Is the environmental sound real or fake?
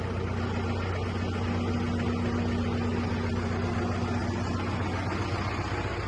real